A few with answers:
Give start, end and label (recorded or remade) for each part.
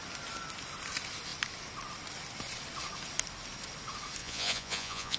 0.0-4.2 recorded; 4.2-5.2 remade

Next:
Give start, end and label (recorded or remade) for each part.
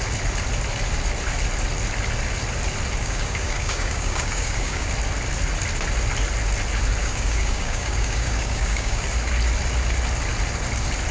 0.0-3.0 recorded; 3.0-4.9 remade; 4.9-7.0 recorded; 7.0-9.0 remade; 9.0-11.1 recorded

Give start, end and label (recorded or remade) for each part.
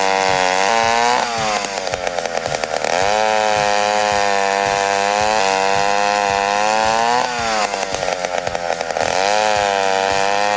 0.0-10.6 recorded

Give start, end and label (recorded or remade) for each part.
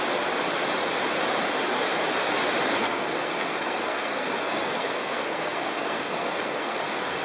0.0-2.7 recorded; 2.7-7.2 remade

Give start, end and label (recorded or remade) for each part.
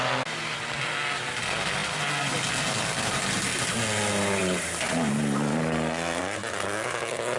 0.0-7.4 recorded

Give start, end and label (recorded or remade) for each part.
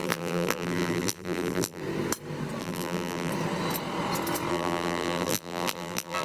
0.0-1.8 remade; 1.8-2.6 recorded; 2.6-3.3 remade; 3.3-4.5 recorded; 4.5-6.2 remade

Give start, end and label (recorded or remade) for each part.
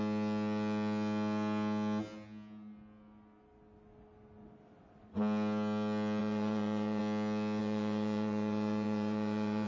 0.0-6.2 recorded; 6.2-7.0 remade; 7.0-7.6 recorded; 7.6-9.7 remade